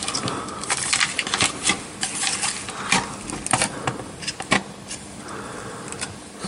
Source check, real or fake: real